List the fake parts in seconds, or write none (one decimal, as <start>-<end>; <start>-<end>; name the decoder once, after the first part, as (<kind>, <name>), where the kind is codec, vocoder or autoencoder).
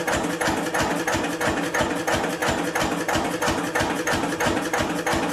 none